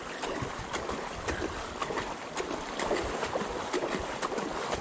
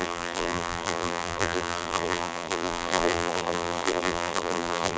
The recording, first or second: first